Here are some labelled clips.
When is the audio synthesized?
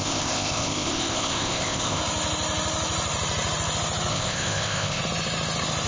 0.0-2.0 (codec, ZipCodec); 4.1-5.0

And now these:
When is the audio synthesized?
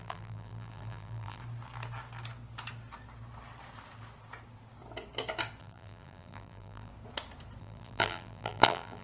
0.0-1.4 (vocoder, BigVGAN v2); 5.6-6.9; 7.6-9.0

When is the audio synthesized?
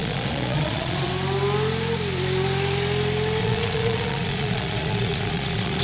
0.0-1.1 (vocoder, Vocos); 3.4-5.8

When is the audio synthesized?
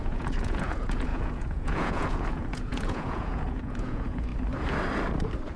0.0-4.3 (vocoder, Vocos)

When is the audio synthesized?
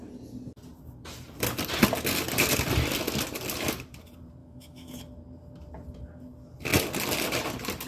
4.4-5.0 (autoencoder, DAC-VAE)